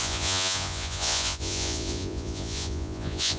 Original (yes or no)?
no